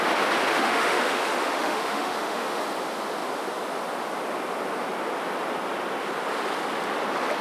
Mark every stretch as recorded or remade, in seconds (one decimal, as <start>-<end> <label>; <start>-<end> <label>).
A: 0.0-0.5 recorded; 0.5-2.6 remade; 2.6-7.4 recorded